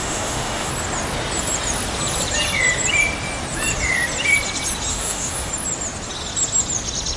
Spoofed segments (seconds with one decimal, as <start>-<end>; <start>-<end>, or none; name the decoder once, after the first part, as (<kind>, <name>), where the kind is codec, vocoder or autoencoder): 0.0-0.7 (autoencoder, DAC-VAE); 4.9-5.5